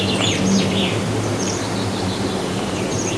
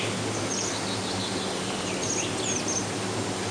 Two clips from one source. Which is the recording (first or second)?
second